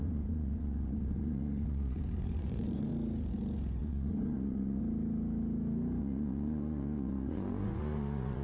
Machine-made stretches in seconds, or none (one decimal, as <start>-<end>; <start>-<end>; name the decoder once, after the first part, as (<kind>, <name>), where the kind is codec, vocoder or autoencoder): 0.0-2.9 (vocoder, Vocos); 3.8-4.8; 6.0-8.4